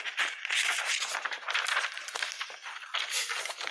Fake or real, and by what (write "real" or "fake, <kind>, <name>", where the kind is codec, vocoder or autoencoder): real